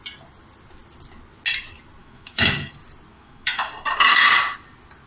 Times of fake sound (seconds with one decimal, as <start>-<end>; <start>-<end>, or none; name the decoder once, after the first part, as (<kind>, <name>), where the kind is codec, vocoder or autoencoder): 2.0-2.7 (autoencoder, DAC-VAE); 3.1-3.7